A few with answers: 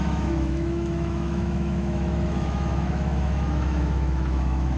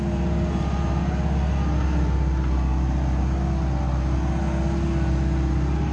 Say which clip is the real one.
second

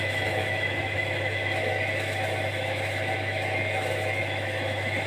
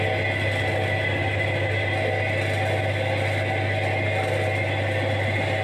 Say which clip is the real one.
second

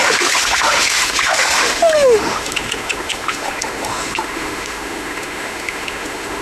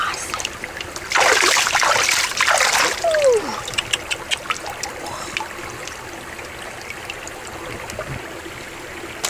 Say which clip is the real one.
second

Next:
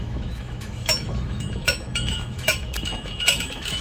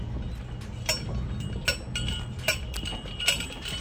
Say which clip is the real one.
second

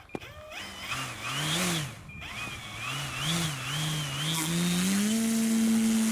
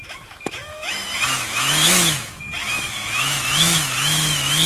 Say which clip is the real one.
first